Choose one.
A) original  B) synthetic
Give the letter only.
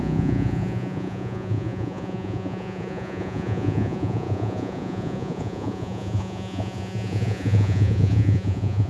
B